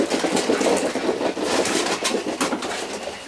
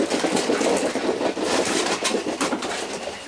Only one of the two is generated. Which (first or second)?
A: second